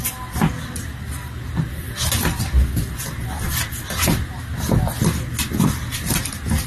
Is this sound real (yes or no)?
yes